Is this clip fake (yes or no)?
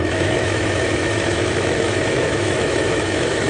yes